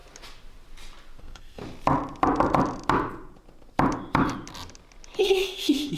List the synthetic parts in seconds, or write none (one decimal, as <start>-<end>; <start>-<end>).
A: 1.2-1.6; 5.2-6.0